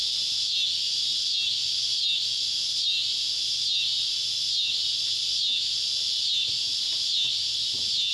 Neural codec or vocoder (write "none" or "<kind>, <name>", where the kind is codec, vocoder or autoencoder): none